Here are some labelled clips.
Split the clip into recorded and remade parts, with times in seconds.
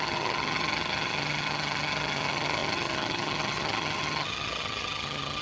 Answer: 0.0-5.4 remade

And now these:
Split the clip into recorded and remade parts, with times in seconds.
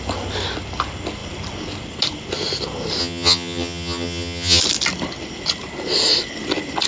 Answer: 0.0-3.0 recorded; 3.0-4.6 remade; 4.6-6.9 recorded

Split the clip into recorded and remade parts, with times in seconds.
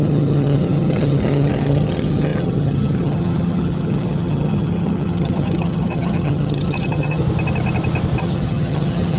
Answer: 0.0-7.2 remade; 7.2-8.2 recorded; 8.2-9.2 remade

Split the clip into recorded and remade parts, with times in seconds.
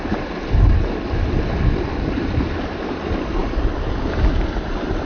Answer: 0.0-5.1 recorded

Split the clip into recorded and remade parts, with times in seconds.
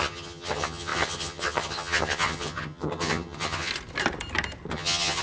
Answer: 0.0-3.7 remade; 3.7-4.7 recorded; 4.7-5.2 remade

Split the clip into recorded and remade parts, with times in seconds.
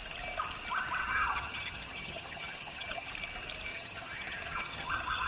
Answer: 0.0-1.0 recorded; 1.0-3.1 remade; 3.1-3.7 recorded; 3.7-5.3 remade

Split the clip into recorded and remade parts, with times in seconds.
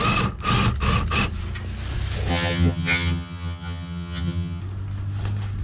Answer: 0.0-2.3 recorded; 2.3-4.6 remade; 4.6-5.6 recorded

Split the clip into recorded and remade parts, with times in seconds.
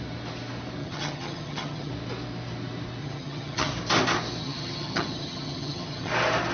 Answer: 0.0-0.8 recorded; 0.8-1.9 remade; 1.9-3.0 recorded; 3.0-3.7 remade; 3.7-4.4 recorded; 4.4-6.1 remade; 6.1-6.5 recorded